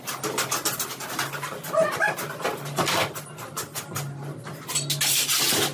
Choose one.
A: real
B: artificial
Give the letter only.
A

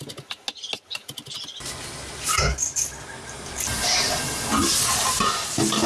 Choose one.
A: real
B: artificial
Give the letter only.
A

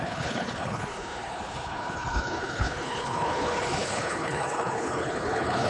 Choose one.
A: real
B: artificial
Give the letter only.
B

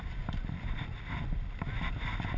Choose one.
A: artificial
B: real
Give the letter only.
B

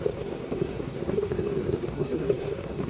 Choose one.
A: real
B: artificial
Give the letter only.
B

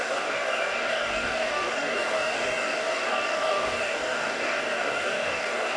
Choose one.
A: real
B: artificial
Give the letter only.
B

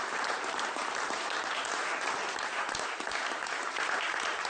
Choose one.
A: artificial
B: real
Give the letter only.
A